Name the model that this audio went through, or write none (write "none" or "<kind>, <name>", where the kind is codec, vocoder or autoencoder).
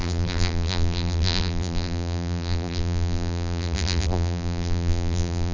vocoder, BigVGAN v2